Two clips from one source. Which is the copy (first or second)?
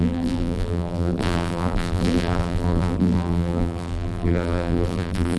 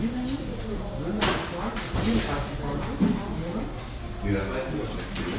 first